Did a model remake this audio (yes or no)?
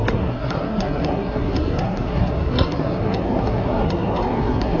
yes